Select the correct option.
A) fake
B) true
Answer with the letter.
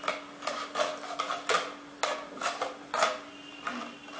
B